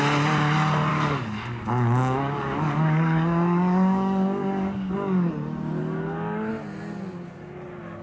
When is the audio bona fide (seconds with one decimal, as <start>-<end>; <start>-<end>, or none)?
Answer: 0.0-0.9; 5.3-5.8; 6.5-8.0